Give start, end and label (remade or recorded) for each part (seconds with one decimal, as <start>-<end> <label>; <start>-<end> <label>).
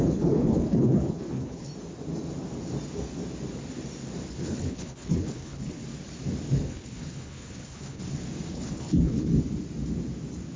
0.0-1.7 remade; 1.7-4.3 recorded; 4.3-5.8 remade; 5.8-6.5 recorded; 6.5-8.0 remade; 8.0-8.5 recorded; 8.5-9.3 remade; 9.3-10.6 recorded